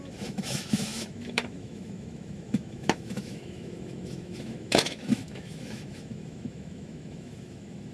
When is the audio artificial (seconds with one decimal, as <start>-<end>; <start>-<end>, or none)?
0.0-7.9